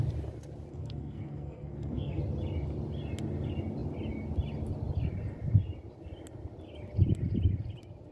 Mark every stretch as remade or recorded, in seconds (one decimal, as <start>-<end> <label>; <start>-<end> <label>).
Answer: 0.0-0.7 recorded; 0.7-2.2 remade; 2.2-8.1 recorded